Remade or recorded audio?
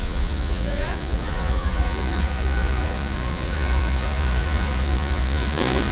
remade